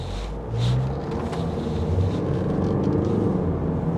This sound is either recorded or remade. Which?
recorded